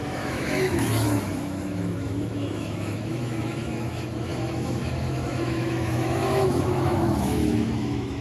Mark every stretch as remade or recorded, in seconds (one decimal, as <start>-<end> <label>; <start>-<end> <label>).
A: 0.0-8.2 remade